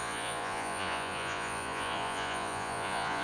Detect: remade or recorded remade